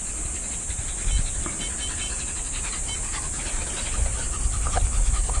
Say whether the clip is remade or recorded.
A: recorded